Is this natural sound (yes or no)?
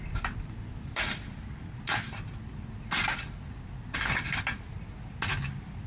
yes